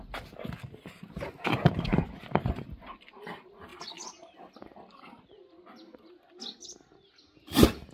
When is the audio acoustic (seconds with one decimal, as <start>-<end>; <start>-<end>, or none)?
0.0-7.9